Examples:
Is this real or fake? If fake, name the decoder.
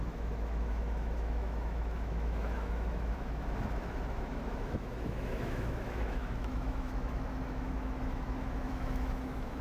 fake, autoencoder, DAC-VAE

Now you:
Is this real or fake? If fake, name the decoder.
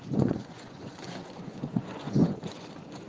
fake, vocoder, Vocos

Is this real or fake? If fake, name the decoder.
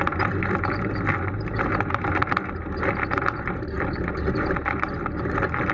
real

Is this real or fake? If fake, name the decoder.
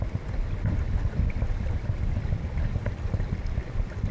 real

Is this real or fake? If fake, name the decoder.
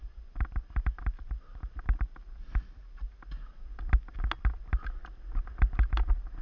real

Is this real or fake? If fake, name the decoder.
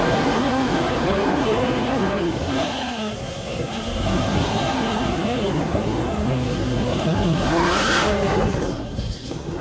fake, codec, SNAC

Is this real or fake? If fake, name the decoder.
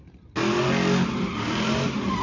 real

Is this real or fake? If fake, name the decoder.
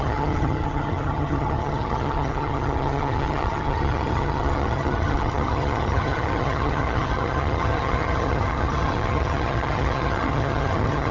fake, vocoder, HiFi-GAN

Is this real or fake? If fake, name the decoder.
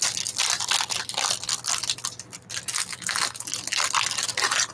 real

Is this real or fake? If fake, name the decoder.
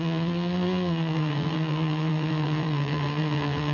fake, vocoder, BigVGAN v2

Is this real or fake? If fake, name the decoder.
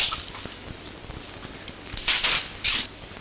real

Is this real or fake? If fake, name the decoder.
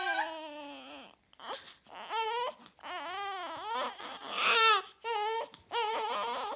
real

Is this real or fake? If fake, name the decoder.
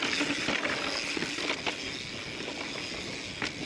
real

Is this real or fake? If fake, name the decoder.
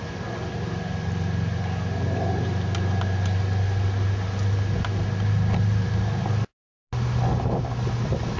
real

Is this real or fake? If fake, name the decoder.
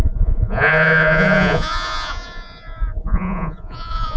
fake, vocoder, Vocos